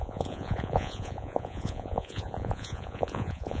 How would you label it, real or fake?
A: fake